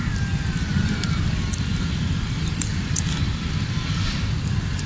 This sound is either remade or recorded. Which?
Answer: recorded